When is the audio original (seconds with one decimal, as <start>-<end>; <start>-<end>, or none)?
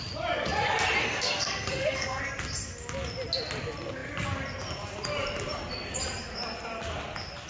0.0-1.0; 2.2-7.5